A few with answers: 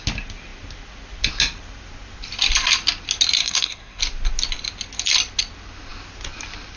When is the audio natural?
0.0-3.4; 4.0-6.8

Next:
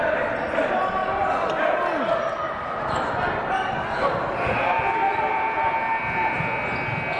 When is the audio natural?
0.0-7.2

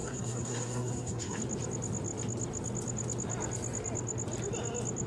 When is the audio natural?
1.4-5.1